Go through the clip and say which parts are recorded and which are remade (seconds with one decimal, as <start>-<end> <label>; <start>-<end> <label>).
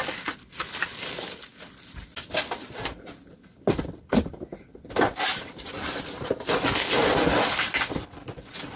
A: 0.0-8.8 recorded